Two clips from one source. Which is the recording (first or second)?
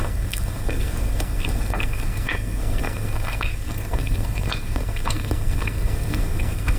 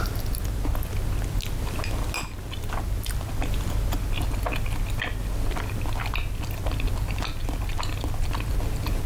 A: second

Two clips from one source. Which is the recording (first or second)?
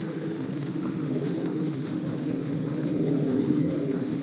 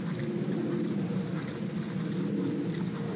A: second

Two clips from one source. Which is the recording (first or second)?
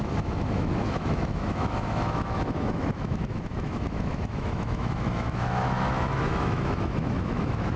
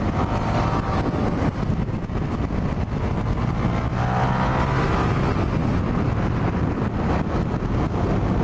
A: second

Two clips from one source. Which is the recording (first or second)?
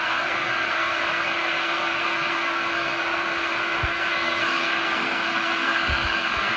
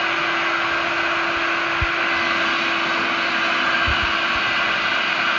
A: second